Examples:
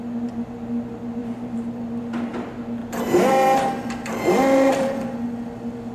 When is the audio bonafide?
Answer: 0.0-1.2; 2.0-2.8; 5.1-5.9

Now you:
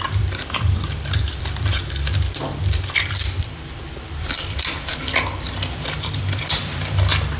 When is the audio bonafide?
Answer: none

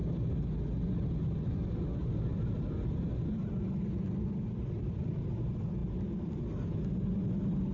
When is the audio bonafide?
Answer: 0.0-4.6

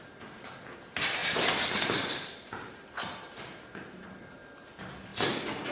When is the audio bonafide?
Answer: 5.1-5.7

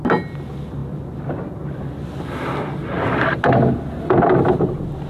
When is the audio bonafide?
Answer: 0.0-5.1

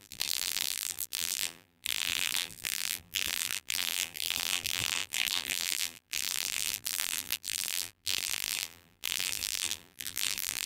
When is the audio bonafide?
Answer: none

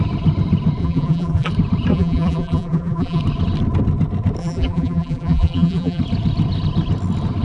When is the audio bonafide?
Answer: 0.0-0.8; 1.5-1.9; 3.2-4.4; 6.0-7.4

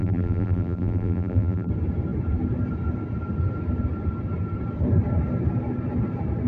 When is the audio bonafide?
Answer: 1.7-6.5